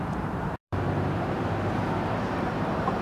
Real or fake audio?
fake